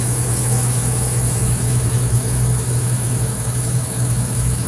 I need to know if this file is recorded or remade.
remade